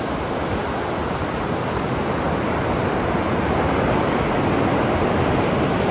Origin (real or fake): real